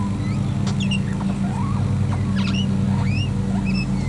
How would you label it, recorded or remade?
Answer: recorded